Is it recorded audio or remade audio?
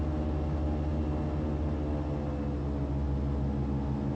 recorded